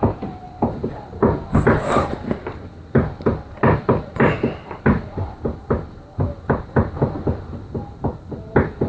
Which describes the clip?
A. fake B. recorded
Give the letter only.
B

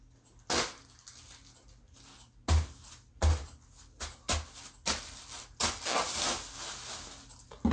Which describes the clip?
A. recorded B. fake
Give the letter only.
A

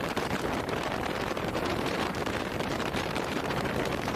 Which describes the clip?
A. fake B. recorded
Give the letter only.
A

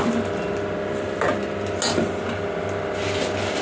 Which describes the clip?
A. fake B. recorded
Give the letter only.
B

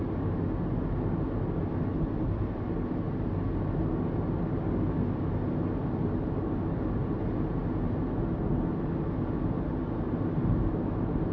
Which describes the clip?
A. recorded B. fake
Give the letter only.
A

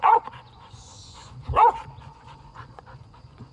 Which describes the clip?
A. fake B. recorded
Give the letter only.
A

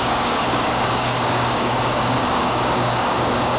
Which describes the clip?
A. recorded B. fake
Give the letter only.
B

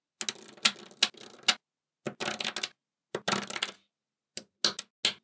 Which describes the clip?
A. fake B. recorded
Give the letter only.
B